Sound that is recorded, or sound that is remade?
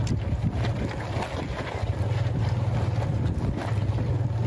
recorded